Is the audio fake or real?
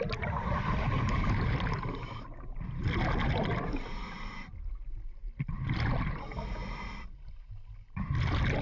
real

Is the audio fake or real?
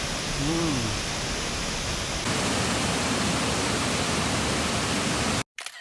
real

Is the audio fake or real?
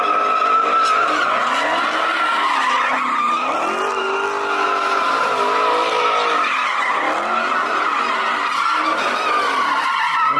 real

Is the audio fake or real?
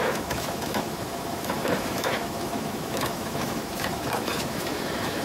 fake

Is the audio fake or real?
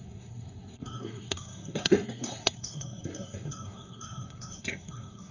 fake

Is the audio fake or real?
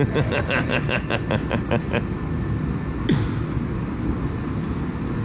real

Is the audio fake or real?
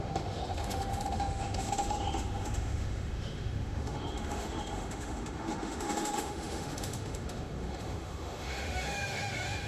fake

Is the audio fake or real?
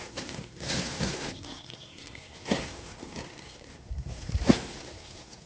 fake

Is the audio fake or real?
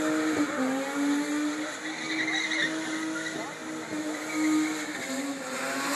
real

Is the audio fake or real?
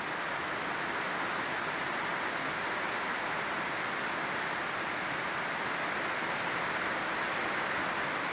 real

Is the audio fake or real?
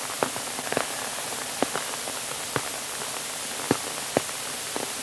real